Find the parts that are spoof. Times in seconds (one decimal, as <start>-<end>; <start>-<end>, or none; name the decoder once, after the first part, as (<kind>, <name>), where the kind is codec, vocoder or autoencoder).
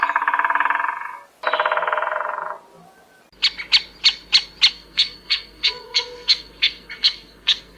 4.7-7.8 (codec, SNAC)